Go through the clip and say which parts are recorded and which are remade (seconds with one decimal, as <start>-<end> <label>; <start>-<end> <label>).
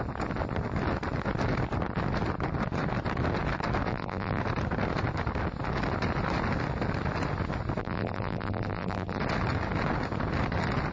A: 0.0-3.9 recorded; 3.9-4.4 remade; 4.4-7.8 recorded; 7.8-9.2 remade; 9.2-10.9 recorded